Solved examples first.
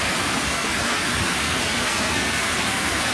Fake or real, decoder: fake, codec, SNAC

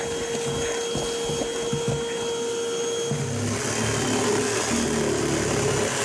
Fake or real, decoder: real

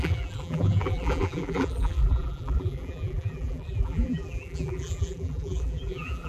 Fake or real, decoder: fake, vocoder, BigVGAN v2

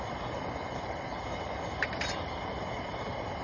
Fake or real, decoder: real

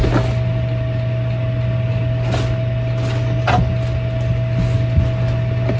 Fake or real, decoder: real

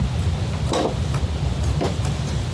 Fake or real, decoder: real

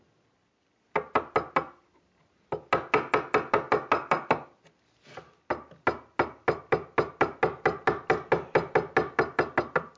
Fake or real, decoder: real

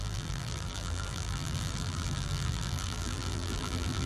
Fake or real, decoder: fake, vocoder, BigVGAN v2